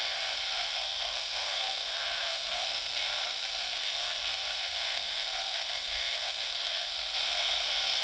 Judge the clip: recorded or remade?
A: remade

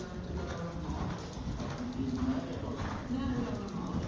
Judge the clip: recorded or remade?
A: recorded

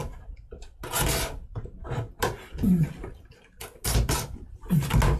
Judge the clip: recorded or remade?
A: recorded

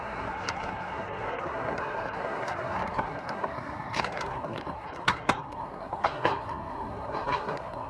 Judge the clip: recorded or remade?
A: remade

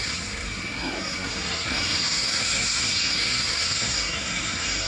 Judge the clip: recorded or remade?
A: remade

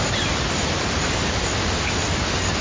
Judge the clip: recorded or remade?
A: recorded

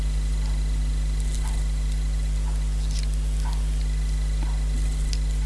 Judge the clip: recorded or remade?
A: recorded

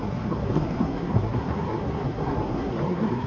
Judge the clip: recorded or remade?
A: remade